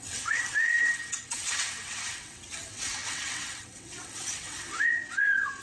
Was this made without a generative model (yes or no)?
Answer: no